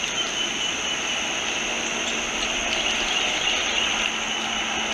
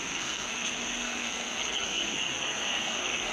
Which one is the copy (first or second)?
second